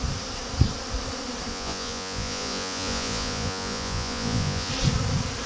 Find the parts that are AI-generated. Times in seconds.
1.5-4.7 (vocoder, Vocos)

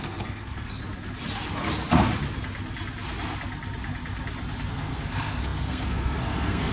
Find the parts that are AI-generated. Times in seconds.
0.0-0.8 (codec, SNAC); 4.7-6.7